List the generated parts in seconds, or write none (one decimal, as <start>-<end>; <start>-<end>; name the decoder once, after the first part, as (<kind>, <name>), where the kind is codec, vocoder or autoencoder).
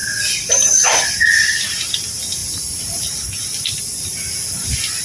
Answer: none